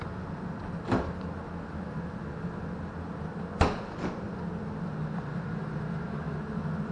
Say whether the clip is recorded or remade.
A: recorded